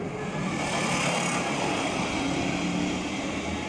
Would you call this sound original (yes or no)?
yes